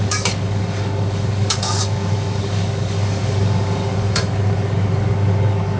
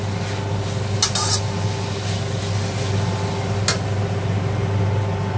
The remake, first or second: first